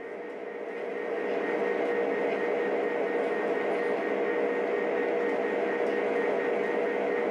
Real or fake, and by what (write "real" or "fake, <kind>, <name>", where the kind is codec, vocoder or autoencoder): real